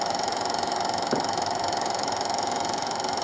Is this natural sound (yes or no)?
no